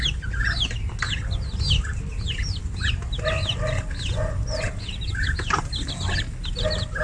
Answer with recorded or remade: recorded